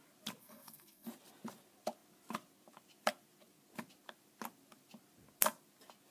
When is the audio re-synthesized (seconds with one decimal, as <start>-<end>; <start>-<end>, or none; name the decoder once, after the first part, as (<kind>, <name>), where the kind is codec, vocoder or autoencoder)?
0.4-1.1 (codec, SNAC)

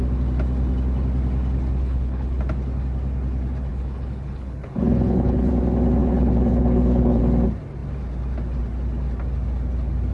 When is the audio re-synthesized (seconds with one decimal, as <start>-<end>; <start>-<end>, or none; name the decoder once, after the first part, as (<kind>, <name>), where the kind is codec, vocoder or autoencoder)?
1.8-2.4 (codec, HILCodec); 3.7-5.5; 6.0-7.2

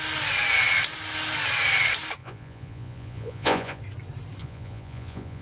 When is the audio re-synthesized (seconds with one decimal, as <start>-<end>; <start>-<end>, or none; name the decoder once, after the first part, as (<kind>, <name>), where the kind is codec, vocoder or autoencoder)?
2.2-3.8 (vocoder, Vocos); 4.4-5.4

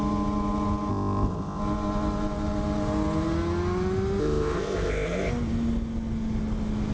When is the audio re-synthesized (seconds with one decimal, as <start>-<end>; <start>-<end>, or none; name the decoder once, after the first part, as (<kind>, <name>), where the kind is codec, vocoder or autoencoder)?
0.9-1.6 (codec, ZipCodec); 4.2-5.3

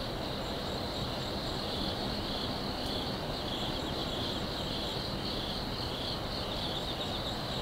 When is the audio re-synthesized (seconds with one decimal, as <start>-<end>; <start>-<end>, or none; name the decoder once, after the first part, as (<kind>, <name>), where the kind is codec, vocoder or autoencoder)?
none

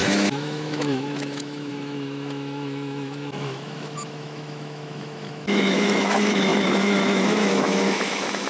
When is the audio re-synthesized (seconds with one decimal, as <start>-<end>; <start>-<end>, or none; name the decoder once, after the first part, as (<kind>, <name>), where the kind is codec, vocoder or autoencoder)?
0.0-8.5 (autoencoder, DAC-VAE)

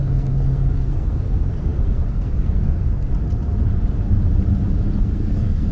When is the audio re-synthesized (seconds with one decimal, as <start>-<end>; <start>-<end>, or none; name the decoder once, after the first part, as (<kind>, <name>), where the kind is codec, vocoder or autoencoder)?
0.0-3.1 (codec, SNAC); 5.0-5.7

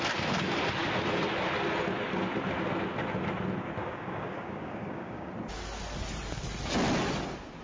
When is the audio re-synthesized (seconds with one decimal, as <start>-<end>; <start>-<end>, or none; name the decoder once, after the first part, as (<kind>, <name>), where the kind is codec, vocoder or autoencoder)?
3.8-5.3 (codec, DAC)